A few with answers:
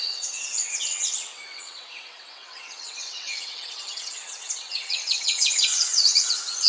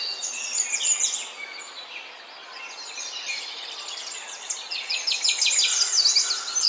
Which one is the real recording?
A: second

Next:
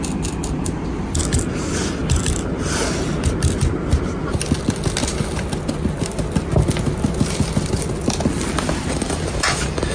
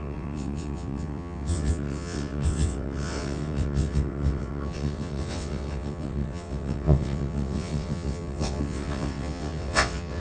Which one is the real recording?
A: first